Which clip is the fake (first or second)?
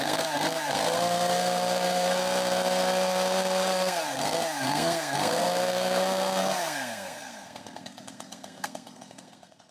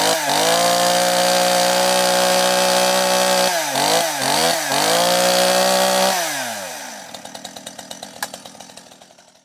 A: first